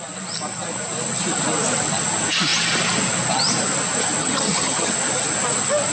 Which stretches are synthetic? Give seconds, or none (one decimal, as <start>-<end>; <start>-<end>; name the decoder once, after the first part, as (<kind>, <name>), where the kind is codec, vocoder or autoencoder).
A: 4.2-4.9 (vocoder, HiFi-GAN)